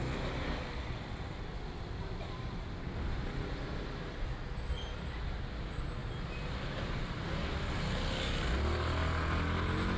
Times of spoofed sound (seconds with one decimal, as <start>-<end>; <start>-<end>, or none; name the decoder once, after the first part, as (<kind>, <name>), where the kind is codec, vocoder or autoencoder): none